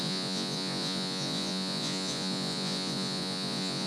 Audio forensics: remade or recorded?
remade